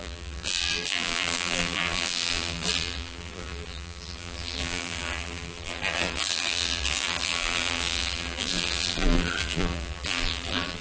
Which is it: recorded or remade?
remade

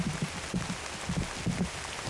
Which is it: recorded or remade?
recorded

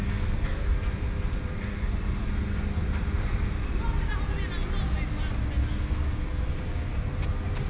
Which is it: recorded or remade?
recorded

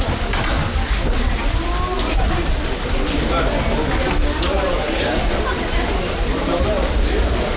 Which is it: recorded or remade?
recorded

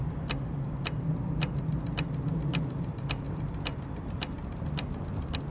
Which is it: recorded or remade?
recorded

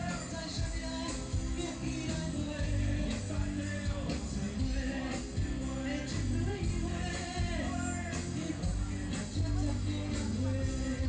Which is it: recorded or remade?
recorded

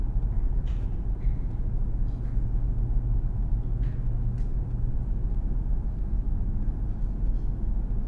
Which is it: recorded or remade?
recorded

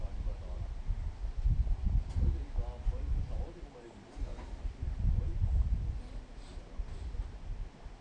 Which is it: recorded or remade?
recorded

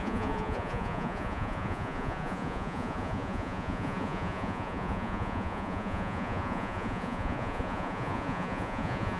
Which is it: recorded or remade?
remade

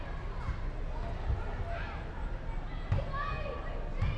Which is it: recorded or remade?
recorded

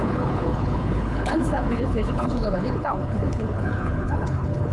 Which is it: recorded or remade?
remade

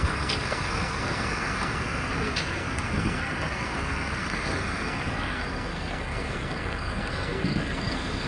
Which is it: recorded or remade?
remade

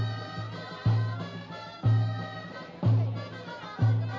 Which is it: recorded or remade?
recorded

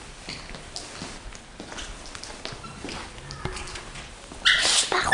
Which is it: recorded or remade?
recorded